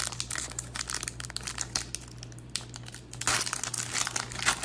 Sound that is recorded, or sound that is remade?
recorded